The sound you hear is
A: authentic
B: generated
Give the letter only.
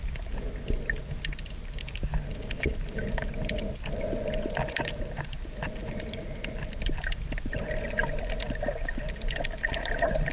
A